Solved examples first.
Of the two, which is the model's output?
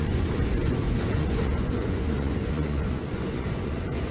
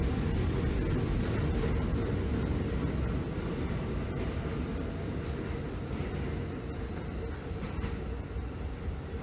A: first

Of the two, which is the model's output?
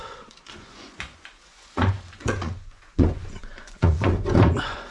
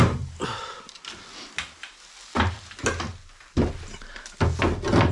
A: first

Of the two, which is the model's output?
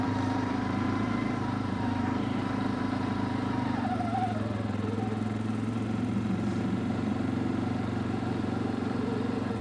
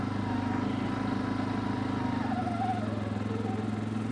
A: first